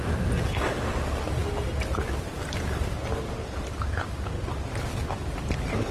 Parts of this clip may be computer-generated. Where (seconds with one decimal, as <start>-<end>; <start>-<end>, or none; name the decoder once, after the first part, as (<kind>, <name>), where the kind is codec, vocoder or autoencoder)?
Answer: none